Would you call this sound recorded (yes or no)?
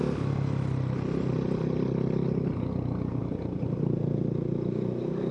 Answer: yes